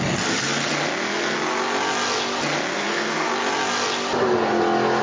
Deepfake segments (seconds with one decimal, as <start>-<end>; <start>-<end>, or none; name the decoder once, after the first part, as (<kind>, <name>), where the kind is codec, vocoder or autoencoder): 2.7-3.3 (codec, SNAC)